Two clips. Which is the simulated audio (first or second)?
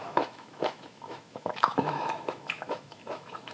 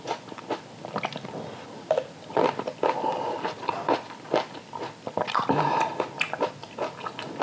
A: first